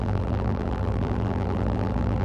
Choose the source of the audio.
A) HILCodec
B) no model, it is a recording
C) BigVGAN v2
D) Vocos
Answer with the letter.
C